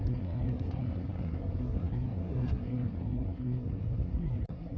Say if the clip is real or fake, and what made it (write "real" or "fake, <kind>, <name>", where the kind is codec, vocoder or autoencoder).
fake, codec, SNAC